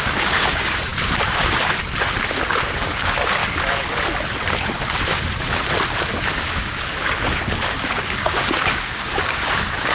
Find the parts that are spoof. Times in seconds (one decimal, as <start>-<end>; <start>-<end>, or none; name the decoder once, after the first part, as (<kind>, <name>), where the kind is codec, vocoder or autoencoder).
0.0-0.9 (codec, DAC); 2.5-3.4; 6.0-9.9